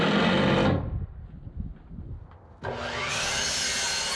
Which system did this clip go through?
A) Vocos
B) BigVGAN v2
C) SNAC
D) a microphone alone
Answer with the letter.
D